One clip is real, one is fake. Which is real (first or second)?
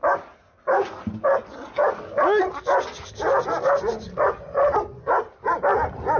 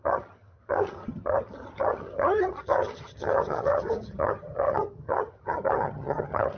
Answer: first